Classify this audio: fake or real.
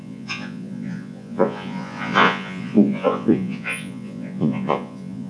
fake